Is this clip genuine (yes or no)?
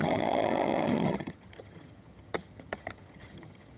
no